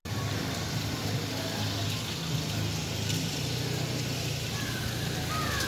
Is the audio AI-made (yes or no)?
no